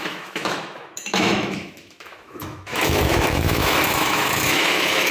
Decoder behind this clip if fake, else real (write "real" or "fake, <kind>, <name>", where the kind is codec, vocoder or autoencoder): fake, autoencoder, DAC-VAE